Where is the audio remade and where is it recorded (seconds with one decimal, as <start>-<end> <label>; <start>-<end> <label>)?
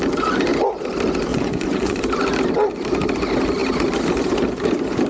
0.0-1.3 recorded; 1.3-2.0 remade; 2.0-5.1 recorded